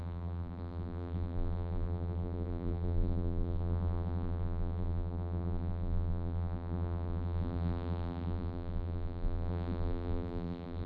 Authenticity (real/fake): fake